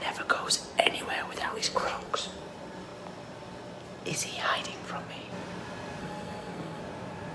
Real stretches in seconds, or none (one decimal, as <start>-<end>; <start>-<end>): 0.0-1.4; 2.1-6.0; 6.8-7.3